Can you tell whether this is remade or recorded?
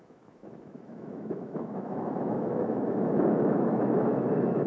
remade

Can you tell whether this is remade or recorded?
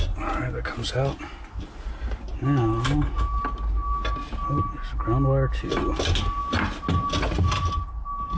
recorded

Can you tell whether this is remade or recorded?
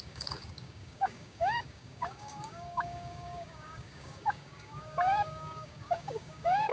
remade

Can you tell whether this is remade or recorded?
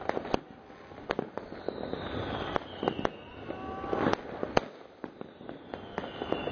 recorded